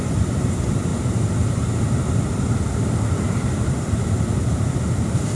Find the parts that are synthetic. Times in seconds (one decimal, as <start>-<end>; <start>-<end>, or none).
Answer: 0.9-4.0